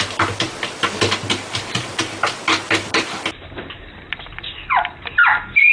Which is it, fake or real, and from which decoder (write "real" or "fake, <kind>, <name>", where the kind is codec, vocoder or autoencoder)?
real